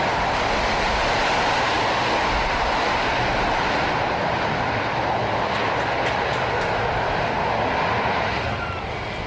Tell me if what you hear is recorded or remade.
recorded